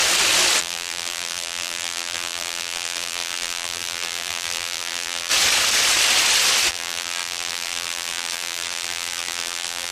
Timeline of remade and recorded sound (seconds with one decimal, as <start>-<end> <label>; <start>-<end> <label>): 0.0-0.6 recorded; 0.6-5.3 remade; 5.3-6.7 recorded; 6.7-9.9 remade